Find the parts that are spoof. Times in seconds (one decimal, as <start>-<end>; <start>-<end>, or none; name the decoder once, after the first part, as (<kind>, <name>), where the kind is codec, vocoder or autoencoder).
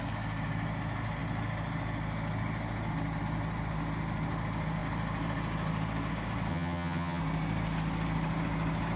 6.5-7.2 (vocoder, HiFi-GAN)